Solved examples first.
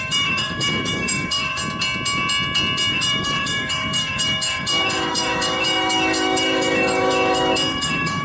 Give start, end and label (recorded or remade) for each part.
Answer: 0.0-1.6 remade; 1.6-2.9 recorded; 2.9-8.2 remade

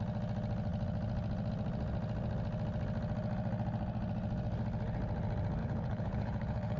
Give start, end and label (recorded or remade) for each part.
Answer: 0.0-5.6 recorded; 5.6-6.8 remade